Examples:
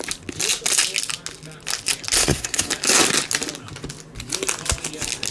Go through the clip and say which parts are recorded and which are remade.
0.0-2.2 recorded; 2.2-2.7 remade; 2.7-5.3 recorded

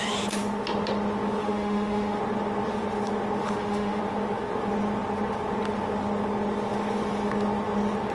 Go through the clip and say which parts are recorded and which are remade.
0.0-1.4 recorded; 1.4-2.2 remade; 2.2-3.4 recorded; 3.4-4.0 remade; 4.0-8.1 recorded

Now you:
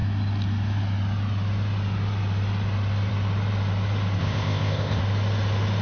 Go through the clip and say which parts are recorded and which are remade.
0.0-4.2 recorded; 4.2-5.0 remade; 5.0-5.8 recorded

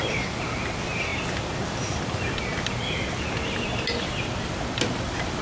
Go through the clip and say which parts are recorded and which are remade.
0.0-5.4 recorded